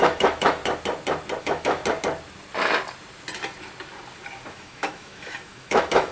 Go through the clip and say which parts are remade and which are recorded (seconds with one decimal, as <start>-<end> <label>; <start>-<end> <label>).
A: 0.0-0.6 remade; 0.6-1.4 recorded; 1.4-1.8 remade; 1.8-4.5 recorded; 4.5-6.1 remade